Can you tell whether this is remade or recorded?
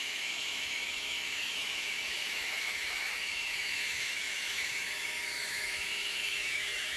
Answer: remade